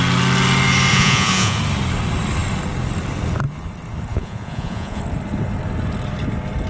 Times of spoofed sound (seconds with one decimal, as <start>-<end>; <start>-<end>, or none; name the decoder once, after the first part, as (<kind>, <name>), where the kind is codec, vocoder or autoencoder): 0.9-1.6 (vocoder, Vocos); 4.1-5.0